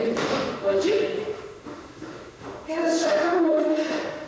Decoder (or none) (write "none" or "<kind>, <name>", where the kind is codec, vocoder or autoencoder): autoencoder, DAC-VAE